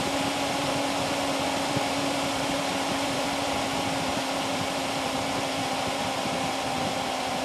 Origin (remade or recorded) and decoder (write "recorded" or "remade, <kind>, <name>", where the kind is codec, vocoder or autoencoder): remade, vocoder, BigVGAN v2